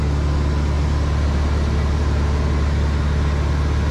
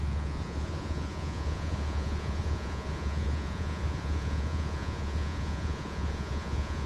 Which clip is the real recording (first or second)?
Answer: first